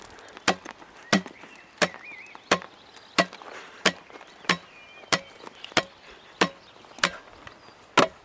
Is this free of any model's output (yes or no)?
yes